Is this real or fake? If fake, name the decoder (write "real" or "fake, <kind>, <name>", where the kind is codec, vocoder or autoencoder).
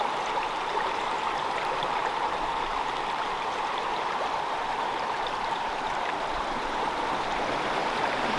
fake, vocoder, BigVGAN v2